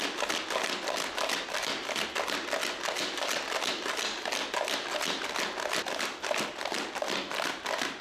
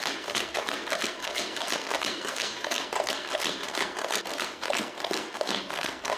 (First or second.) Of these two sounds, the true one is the first